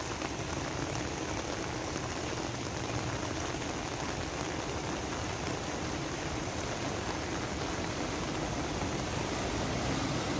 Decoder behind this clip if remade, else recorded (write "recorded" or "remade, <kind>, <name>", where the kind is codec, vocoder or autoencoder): recorded